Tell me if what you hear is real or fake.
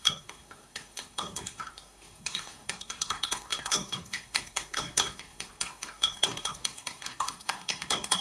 fake